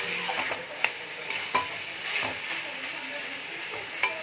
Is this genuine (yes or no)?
yes